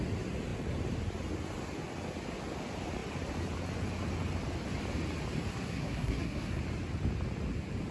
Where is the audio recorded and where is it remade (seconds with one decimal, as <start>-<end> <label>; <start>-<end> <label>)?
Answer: 0.0-5.5 recorded; 5.5-6.6 remade; 6.6-7.9 recorded